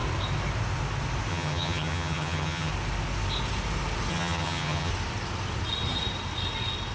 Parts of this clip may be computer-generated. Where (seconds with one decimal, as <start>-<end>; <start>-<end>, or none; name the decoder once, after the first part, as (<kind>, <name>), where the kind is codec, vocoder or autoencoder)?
1.3-2.7 (vocoder, HiFi-GAN); 4.1-4.9